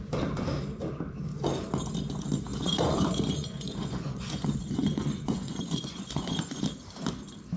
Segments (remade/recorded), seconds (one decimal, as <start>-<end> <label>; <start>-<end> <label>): 0.0-2.5 recorded; 2.5-6.6 remade; 6.6-7.6 recorded